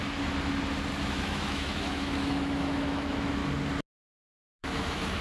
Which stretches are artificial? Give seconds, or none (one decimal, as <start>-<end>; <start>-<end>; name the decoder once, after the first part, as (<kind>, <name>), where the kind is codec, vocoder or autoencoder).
1.0-3.4 (autoencoder, DAC-VAE); 4.6-5.2